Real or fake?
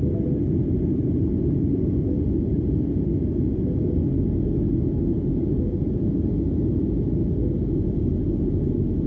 real